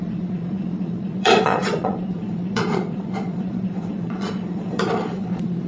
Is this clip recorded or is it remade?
remade